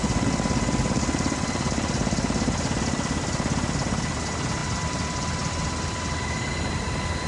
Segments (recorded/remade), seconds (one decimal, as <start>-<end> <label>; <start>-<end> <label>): 0.0-7.3 recorded